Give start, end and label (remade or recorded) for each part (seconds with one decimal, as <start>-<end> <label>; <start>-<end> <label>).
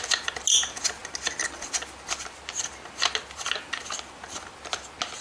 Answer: 0.0-5.2 recorded